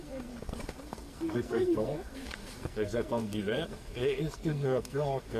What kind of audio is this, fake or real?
fake